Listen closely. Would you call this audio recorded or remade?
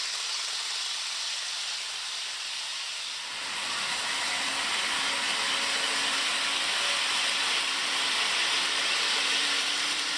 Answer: recorded